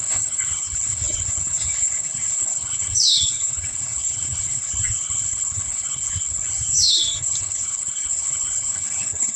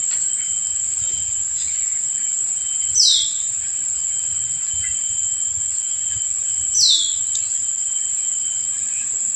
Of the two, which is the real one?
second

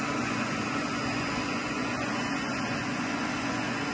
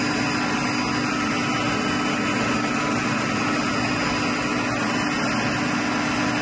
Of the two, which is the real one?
second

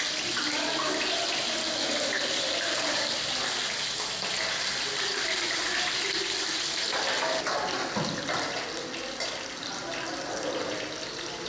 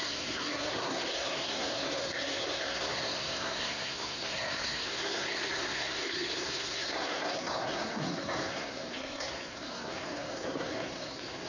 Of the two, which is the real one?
first